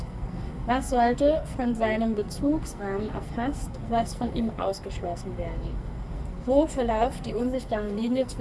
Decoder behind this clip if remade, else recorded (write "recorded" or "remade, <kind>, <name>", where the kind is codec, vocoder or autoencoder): remade, codec, SNAC